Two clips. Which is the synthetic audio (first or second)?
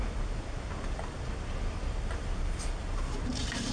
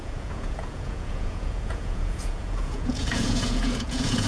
second